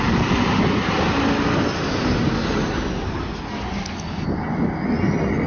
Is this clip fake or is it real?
real